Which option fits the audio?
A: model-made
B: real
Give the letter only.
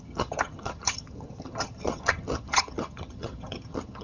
A